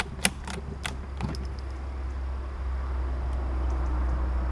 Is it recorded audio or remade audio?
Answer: recorded